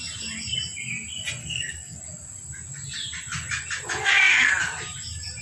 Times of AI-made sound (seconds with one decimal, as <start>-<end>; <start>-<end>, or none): 1.4-2.0; 4.0-4.5